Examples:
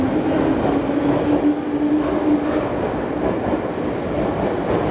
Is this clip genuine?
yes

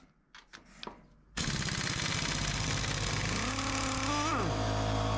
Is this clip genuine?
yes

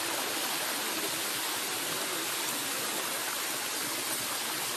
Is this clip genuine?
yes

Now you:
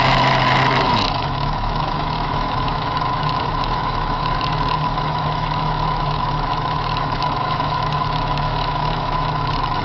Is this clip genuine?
no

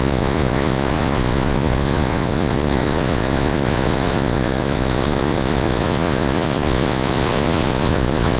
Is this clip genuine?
no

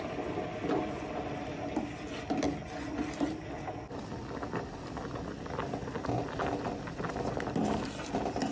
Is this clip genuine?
yes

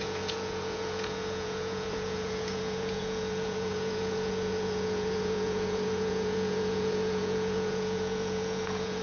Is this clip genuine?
no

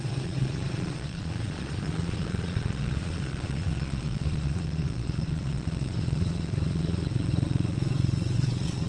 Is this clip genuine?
no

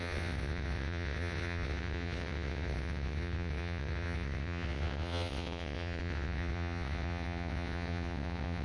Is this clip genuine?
no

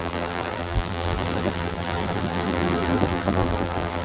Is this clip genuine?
no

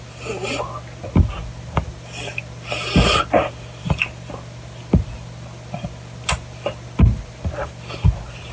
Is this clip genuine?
yes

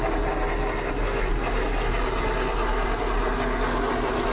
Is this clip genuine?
yes